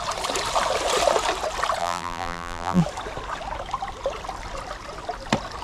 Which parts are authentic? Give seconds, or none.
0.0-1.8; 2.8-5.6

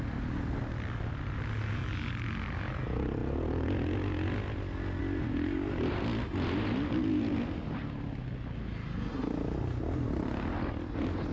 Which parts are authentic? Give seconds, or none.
0.0-11.3

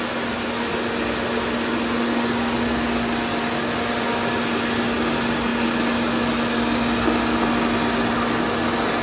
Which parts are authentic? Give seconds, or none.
0.0-9.0

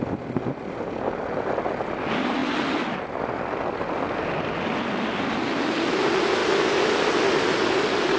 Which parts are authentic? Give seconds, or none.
0.0-8.2

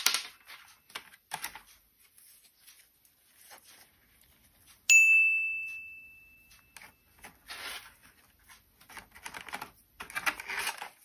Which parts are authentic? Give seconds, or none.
0.0-11.0

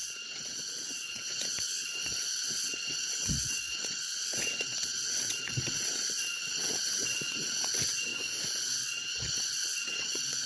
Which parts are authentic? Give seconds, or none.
8.1-8.8

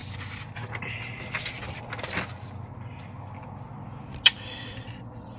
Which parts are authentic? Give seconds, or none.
0.0-5.4

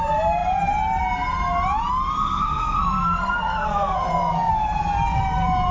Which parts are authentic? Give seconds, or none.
0.0-2.2; 4.5-5.7